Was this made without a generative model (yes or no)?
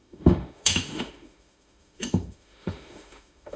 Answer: no